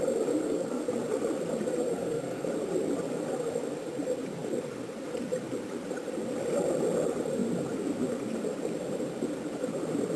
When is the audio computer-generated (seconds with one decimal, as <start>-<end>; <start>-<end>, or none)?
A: 0.4-0.9; 1.9-2.5